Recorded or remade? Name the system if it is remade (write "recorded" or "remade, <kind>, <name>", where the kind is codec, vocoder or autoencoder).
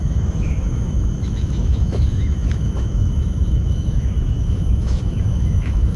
remade, autoencoder, DAC-VAE